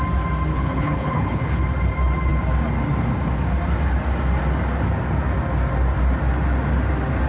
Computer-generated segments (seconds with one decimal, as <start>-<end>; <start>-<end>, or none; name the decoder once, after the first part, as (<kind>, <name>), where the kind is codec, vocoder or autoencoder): 0.5-1.6 (codec, HILCodec)